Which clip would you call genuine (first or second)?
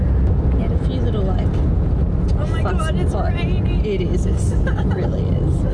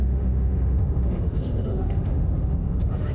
first